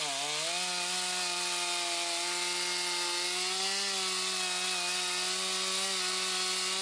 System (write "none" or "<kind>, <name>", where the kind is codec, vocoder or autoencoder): none